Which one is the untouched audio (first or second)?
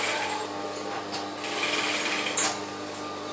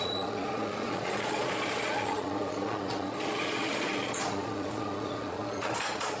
first